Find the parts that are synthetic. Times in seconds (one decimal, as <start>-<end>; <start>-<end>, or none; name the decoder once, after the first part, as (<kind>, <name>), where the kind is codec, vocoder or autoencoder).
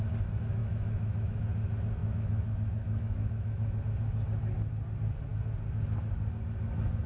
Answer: 0.6-1.4 (autoencoder, DAC-VAE); 2.0-3.8